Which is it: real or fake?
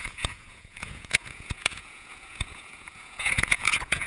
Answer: fake